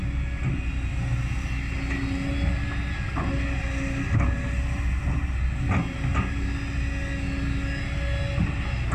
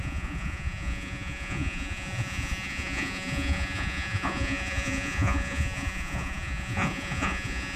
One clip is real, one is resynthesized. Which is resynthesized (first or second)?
second